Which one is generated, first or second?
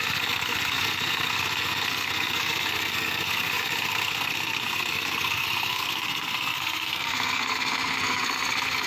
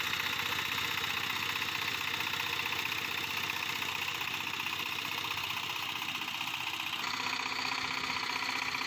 first